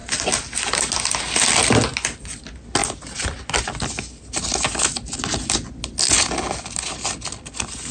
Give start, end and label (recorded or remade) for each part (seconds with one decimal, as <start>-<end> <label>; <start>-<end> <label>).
0.0-7.9 recorded